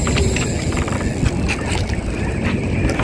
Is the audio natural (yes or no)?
yes